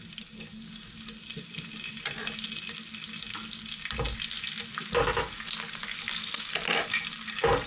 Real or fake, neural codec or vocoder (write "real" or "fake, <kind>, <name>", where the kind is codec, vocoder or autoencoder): real